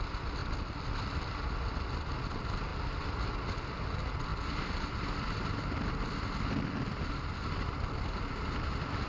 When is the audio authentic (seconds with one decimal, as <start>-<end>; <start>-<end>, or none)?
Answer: 0.0-9.1